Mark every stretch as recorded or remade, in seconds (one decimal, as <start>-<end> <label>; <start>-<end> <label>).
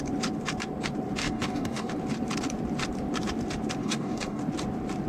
0.0-1.2 recorded; 1.2-1.9 remade; 1.9-3.8 recorded; 3.8-4.4 remade; 4.4-5.1 recorded